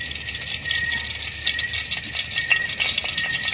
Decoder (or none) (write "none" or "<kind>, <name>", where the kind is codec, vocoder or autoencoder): none